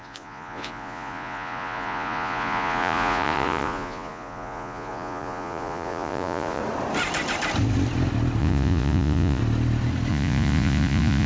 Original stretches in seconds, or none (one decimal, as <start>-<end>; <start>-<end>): 6.6-8.4; 9.4-10.1